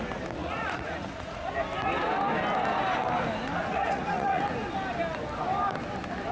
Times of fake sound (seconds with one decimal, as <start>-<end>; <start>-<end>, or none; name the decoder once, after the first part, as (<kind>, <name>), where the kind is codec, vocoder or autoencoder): 0.4-1.5 (vocoder, Vocos); 3.7-4.4